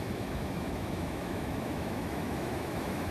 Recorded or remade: remade